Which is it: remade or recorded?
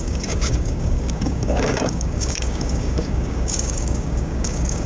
remade